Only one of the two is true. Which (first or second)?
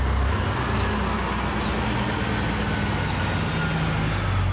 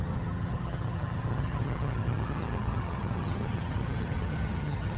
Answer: first